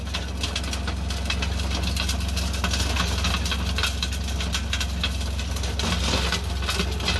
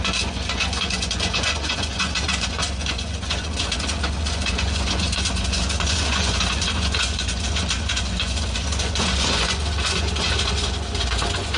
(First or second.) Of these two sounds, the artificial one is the second